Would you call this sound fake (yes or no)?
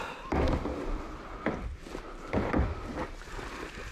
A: no